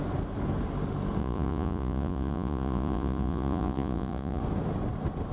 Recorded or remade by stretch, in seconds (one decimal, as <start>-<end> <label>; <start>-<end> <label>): 0.0-1.2 recorded; 1.2-4.4 remade; 4.4-5.3 recorded